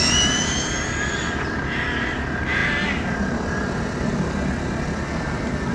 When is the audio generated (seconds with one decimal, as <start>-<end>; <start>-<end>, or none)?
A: none